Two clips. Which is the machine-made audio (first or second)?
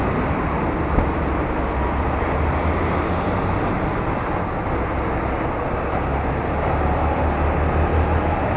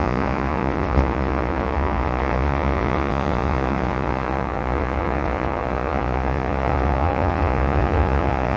second